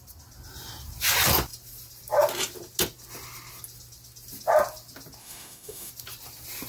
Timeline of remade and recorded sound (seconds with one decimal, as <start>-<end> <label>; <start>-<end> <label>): 0.0-5.2 recorded; 5.2-5.9 remade; 5.9-6.7 recorded